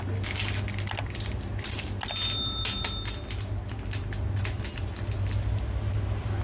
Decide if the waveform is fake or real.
real